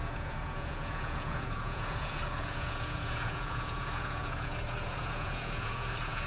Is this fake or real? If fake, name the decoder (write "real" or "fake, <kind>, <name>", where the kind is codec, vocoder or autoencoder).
fake, vocoder, Vocos